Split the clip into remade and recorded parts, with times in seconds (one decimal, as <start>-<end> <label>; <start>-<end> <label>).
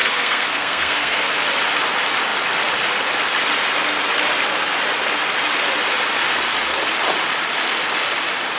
0.0-1.3 remade; 1.3-8.6 recorded